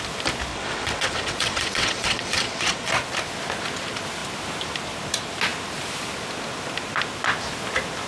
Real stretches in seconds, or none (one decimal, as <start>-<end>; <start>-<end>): 0.0-0.5; 2.9-8.1